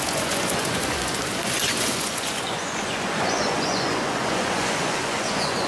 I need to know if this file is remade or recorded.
remade